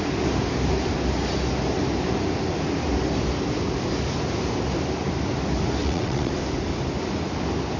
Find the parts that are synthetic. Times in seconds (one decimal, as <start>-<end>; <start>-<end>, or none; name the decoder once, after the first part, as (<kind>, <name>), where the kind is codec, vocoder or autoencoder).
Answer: 5.8-6.3 (vocoder, WaveNeXt)